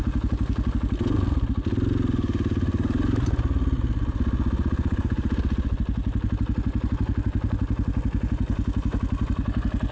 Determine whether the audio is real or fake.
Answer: real